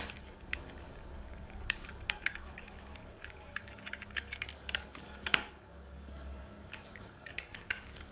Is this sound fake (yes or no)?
yes